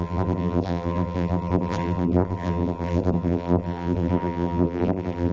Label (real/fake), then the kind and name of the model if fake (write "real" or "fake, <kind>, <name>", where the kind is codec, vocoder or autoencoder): fake, vocoder, BigVGAN v2